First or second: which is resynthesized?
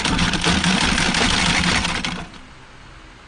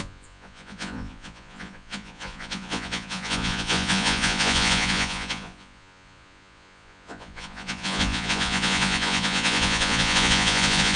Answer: second